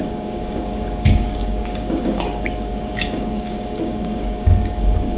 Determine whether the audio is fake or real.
fake